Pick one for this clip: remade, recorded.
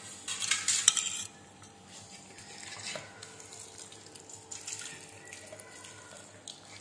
recorded